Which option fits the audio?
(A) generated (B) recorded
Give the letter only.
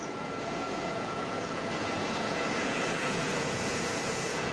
A